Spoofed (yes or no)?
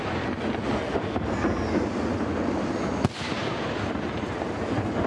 no